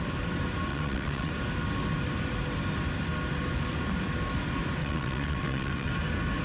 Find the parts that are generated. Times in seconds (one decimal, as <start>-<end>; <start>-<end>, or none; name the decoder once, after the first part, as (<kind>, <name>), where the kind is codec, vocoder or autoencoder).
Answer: 0.7-1.3 (vocoder, WaveNeXt); 4.8-5.9